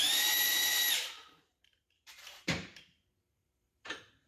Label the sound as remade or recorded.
remade